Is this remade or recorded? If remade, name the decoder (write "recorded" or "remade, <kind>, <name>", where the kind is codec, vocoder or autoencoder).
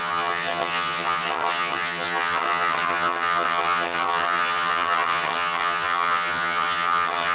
remade, vocoder, HiFi-GAN